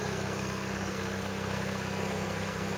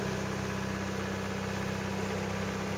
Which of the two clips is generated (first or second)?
first